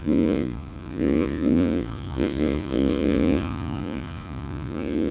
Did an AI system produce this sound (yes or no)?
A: yes